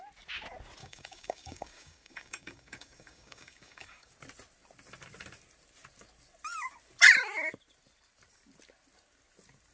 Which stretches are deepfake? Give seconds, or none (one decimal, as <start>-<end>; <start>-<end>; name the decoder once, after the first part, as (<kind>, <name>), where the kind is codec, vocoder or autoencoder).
0.8-4.1 (codec, DAC)